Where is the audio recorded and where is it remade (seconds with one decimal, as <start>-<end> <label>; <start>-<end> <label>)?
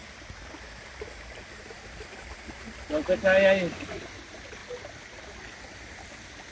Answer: 0.0-6.5 recorded